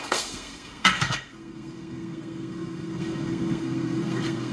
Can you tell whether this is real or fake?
fake